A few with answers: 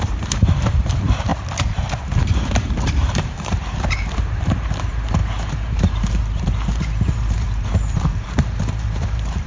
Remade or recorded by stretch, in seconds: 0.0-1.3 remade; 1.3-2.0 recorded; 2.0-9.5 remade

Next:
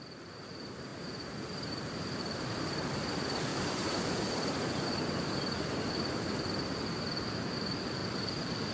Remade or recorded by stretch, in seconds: 0.0-0.9 recorded; 0.9-2.2 remade; 2.2-3.5 recorded; 3.5-4.6 remade; 4.6-8.7 recorded

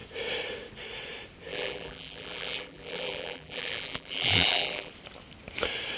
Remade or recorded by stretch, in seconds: 0.0-1.5 recorded; 1.5-4.9 remade; 4.9-6.0 recorded

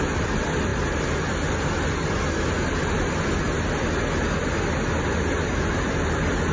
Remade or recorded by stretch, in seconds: 0.0-6.5 recorded

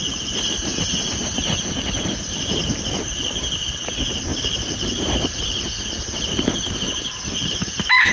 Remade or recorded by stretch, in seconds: 0.0-1.4 recorded; 1.4-3.2 remade; 3.2-4.3 recorded; 4.3-8.1 remade